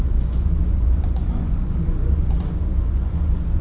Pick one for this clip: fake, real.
fake